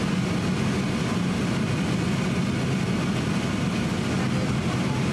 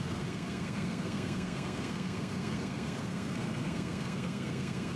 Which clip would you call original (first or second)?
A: first